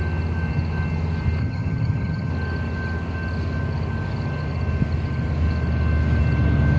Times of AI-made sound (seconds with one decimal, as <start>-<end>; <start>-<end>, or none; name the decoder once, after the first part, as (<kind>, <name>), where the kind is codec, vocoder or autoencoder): 1.4-2.3 (vocoder, HiFi-GAN)